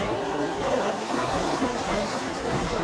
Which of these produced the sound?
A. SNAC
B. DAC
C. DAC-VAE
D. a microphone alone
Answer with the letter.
A